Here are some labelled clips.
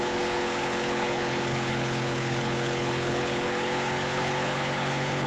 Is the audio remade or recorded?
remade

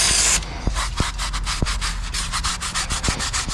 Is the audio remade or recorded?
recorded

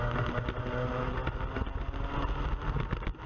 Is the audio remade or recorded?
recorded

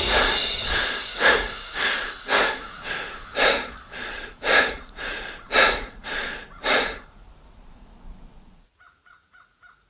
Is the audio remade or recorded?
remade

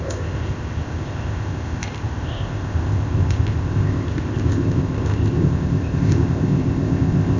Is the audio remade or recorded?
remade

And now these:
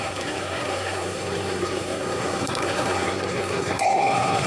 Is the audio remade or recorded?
remade